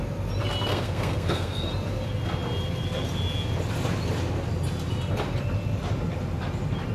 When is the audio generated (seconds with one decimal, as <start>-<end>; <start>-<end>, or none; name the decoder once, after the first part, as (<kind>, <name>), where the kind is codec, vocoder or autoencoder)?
0.7-1.7 (codec, SNAC)